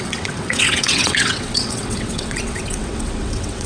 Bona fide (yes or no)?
no